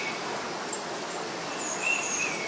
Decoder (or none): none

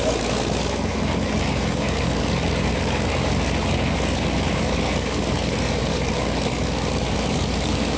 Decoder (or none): codec, DAC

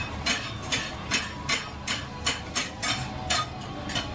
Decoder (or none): none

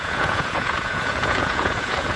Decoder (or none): vocoder, Vocos